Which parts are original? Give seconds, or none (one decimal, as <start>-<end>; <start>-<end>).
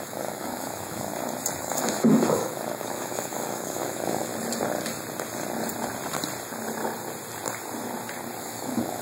1.1-1.6; 4.3-8.4